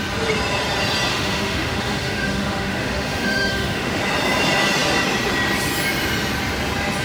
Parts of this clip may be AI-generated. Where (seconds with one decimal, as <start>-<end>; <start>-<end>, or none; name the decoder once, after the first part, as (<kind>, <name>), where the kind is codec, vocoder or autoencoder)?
1.1-4.0 (autoencoder, DAC-VAE)